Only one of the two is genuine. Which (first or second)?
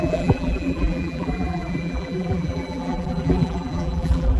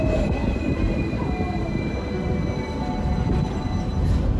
second